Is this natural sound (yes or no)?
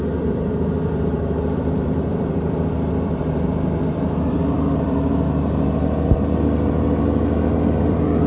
no